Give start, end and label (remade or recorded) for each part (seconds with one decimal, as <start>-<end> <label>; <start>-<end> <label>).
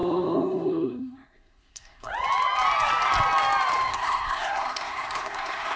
0.0-2.1 remade; 2.1-3.9 recorded; 3.9-5.8 remade